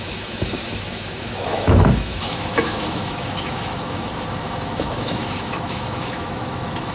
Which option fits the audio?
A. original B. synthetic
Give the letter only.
B